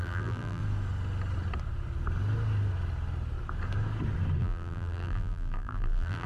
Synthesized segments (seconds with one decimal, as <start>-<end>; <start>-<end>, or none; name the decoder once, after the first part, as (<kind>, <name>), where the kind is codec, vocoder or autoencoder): 0.0-0.6 (vocoder, BigVGAN v2); 4.4-6.3